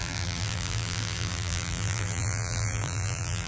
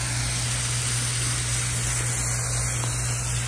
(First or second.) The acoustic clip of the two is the second